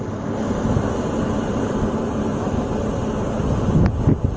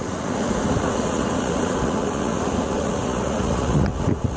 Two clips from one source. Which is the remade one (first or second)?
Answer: second